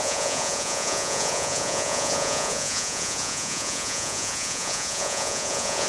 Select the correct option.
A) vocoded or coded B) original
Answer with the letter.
A